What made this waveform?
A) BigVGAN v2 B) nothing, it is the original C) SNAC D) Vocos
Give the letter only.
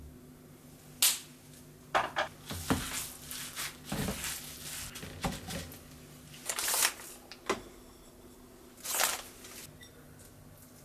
B